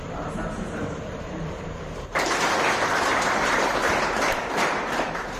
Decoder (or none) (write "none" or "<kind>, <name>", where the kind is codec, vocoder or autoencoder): vocoder, BigVGAN v2